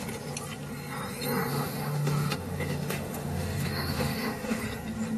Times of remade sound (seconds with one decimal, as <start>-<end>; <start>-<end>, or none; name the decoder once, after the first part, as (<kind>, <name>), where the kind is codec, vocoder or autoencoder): 1.5-4.6 (autoencoder, DAC-VAE)